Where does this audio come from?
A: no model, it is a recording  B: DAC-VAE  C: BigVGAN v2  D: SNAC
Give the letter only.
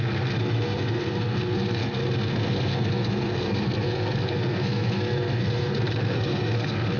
D